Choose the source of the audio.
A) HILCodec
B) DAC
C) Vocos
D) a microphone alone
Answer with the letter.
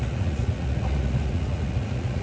C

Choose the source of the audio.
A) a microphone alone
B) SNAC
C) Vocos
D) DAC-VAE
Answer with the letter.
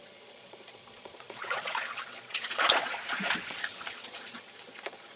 C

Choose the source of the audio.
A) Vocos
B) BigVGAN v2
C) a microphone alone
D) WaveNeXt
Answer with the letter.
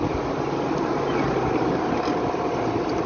C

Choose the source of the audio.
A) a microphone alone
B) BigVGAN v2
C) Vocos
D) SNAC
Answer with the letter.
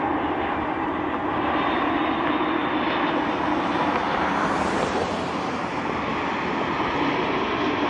A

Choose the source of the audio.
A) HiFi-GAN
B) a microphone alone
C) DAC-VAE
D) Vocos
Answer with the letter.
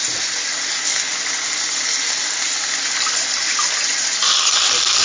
B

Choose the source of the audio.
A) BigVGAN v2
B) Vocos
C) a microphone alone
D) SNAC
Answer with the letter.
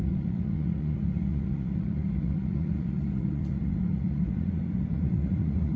B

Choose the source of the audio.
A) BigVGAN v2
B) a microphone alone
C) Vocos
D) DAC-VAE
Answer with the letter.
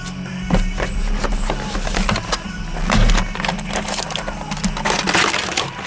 B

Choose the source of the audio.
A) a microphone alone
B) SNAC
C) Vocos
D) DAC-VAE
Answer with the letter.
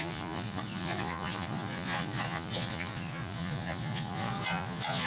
C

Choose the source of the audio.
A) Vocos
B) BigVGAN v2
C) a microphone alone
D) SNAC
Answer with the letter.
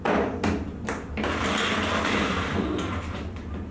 C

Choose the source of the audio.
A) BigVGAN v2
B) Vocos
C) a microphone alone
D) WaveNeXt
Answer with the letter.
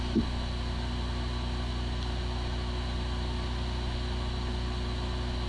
C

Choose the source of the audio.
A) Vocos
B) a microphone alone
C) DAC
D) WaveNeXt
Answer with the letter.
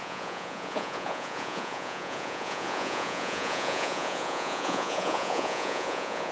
A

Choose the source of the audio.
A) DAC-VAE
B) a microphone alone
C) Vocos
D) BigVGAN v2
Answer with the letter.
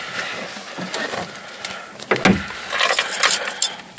B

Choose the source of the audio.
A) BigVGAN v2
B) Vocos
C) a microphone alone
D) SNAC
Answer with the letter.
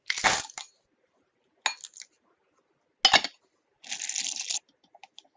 C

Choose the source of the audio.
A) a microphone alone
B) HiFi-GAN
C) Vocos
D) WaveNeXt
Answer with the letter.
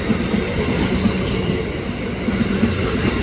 A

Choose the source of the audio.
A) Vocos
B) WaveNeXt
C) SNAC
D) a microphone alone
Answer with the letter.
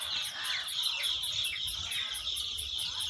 D